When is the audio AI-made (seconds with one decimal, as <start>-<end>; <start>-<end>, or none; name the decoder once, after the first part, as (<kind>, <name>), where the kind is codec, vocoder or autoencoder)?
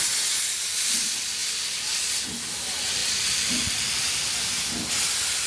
none